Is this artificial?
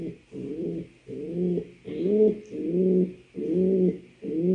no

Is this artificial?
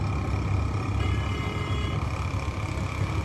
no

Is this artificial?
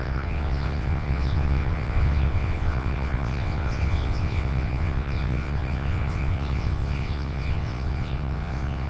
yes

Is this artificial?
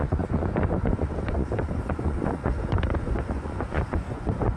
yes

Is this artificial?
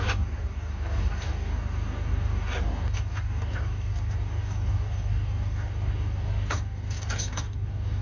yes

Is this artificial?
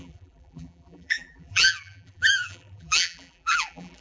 yes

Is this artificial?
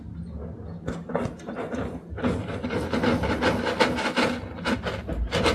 no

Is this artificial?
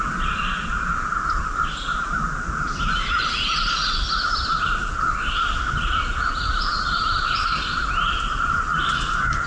no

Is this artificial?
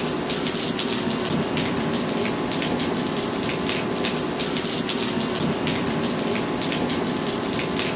no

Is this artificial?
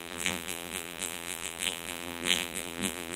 yes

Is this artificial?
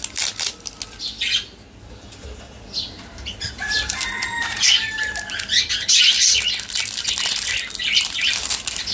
no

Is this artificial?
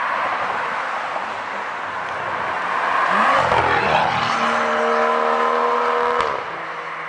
no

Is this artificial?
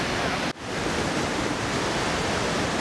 no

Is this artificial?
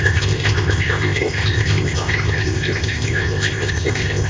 yes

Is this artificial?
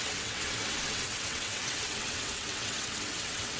yes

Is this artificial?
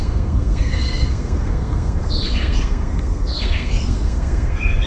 yes